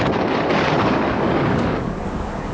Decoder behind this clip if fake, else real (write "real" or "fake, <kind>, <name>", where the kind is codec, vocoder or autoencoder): fake, codec, DAC